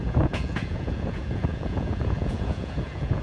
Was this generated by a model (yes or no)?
yes